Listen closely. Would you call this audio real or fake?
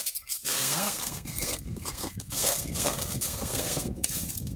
fake